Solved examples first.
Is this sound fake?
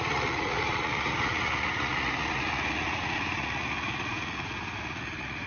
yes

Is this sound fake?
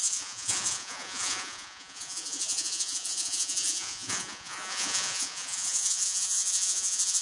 yes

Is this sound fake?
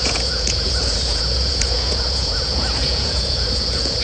yes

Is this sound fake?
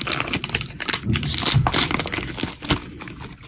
no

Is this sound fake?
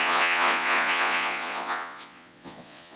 yes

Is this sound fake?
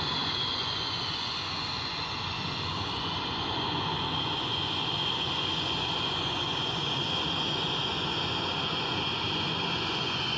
yes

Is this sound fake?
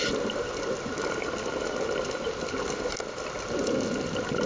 no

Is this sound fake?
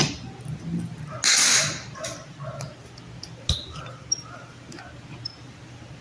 no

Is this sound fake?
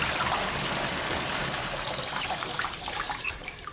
no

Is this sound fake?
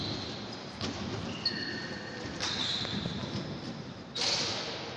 no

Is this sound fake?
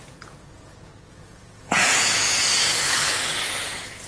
yes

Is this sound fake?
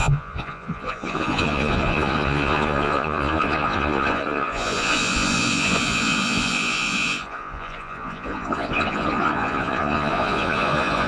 yes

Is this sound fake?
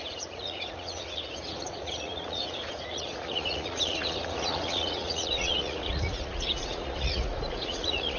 yes